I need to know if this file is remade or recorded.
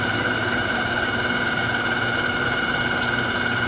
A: remade